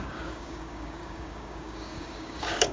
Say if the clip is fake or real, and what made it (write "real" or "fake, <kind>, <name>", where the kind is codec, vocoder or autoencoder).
fake, codec, DAC